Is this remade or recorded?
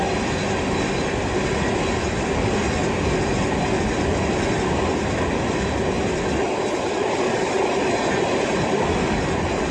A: recorded